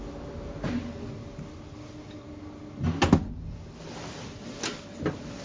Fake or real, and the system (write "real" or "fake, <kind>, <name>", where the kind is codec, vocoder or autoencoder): real